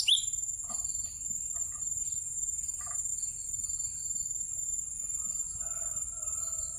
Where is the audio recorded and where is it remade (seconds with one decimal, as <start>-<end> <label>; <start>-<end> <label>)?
0.0-6.8 recorded